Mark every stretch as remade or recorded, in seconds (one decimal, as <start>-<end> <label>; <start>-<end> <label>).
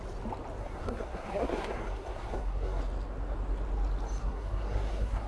0.0-0.6 recorded; 0.6-2.8 remade; 2.8-4.2 recorded; 4.2-5.3 remade